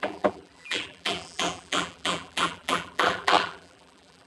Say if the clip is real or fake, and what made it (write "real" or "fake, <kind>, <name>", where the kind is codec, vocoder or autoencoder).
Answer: fake, vocoder, BigVGAN v2